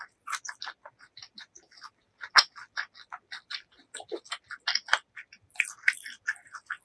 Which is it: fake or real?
real